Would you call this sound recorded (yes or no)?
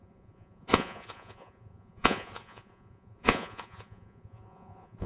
no